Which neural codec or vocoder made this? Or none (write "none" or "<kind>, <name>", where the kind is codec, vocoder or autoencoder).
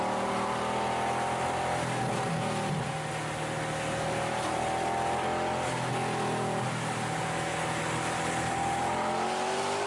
none